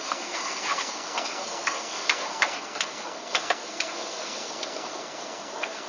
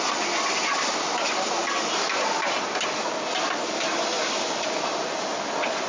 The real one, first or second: second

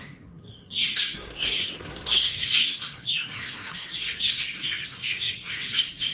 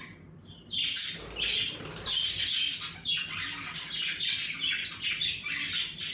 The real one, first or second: second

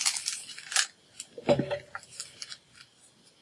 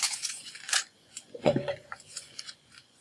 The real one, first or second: first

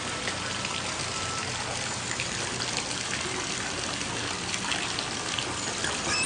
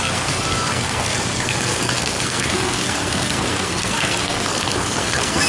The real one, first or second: first